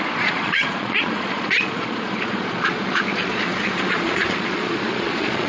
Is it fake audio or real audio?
fake